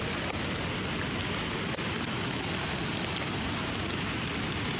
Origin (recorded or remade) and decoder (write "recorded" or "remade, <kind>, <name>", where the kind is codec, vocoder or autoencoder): recorded